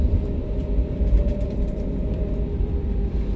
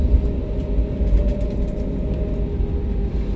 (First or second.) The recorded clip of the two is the second